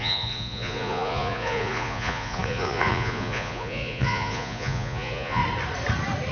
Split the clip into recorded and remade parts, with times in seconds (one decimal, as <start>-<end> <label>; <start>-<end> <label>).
0.0-5.4 remade; 5.4-6.3 recorded